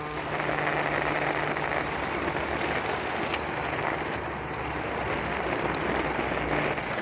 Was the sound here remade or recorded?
recorded